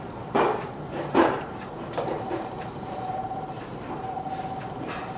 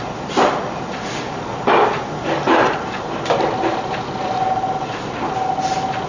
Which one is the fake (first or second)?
first